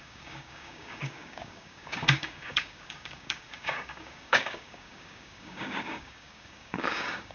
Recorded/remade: remade